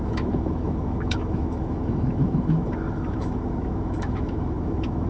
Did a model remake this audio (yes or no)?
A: yes